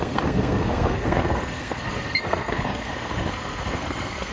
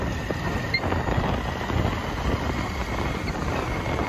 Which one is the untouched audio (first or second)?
second